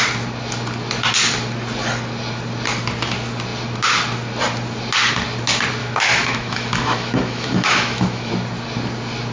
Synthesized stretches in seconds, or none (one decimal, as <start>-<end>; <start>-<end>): 5.8-8.3